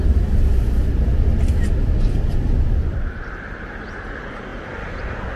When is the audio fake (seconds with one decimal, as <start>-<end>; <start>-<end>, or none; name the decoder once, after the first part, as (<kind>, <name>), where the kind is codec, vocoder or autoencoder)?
0.0-4.5 (vocoder, BigVGAN v2)